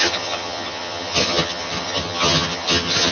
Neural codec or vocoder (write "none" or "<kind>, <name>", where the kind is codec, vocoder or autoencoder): vocoder, HiFi-GAN